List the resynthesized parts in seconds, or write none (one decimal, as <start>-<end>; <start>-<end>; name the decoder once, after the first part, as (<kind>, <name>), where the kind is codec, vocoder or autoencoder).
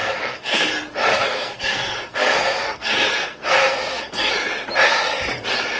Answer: 0.0-0.7 (codec, SNAC); 1.1-4.3